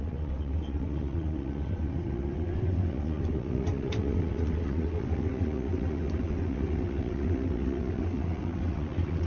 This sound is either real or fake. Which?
fake